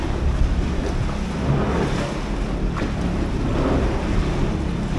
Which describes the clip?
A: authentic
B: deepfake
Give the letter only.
A